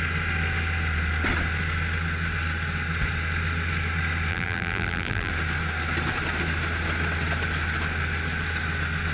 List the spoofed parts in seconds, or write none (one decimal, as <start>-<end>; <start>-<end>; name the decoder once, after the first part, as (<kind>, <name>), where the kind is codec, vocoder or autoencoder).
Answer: 4.3-5.3 (vocoder, BigVGAN v2)